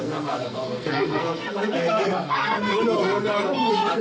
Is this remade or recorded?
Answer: remade